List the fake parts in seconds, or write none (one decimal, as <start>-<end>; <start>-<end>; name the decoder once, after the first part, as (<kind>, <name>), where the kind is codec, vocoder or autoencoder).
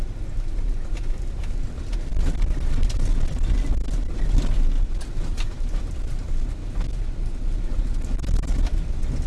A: none